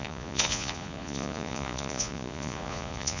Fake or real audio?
fake